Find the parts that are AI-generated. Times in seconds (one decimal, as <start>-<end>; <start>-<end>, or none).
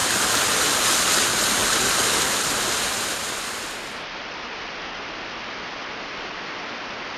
0.0-1.0; 1.6-2.5